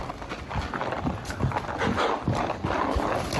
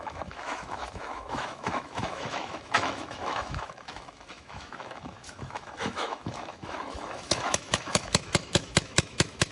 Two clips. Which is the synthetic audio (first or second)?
second